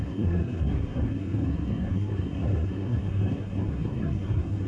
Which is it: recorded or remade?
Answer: remade